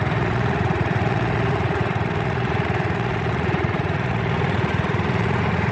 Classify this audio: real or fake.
fake